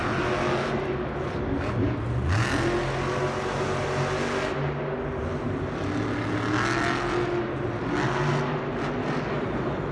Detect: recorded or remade recorded